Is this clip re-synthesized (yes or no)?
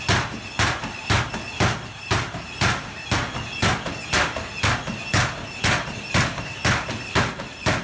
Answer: no